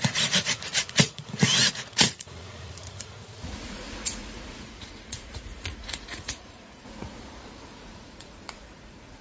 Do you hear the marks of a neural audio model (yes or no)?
yes